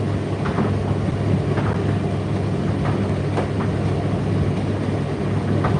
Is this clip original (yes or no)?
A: yes